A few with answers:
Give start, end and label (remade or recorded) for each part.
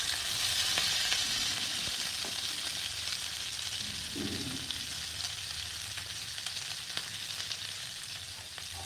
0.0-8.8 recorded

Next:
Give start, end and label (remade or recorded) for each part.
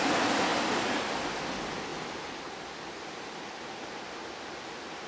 0.0-5.1 recorded